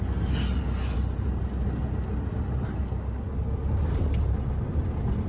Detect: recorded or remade recorded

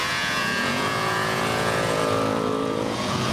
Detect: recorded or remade remade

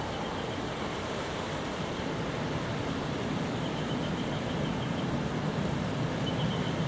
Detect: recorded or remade recorded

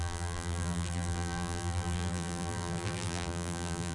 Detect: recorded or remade remade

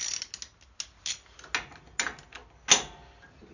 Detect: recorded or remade recorded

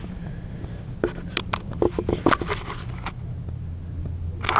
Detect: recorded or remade recorded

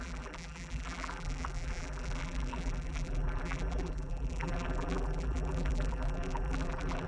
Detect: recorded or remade remade